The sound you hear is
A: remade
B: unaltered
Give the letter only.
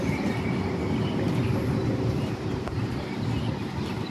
B